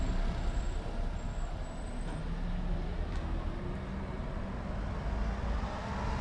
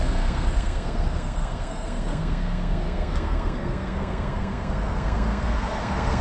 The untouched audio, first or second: first